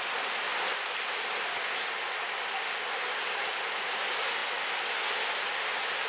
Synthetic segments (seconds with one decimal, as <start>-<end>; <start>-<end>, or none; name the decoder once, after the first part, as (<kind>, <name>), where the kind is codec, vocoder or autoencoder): none